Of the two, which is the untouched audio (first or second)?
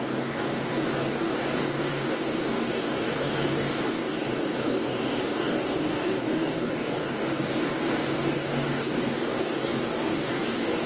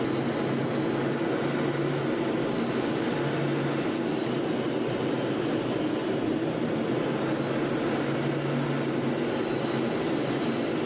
second